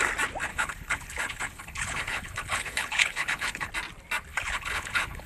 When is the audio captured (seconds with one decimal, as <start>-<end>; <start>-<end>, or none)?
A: 0.0-0.5; 3.7-4.3